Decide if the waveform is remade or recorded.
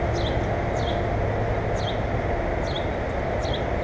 recorded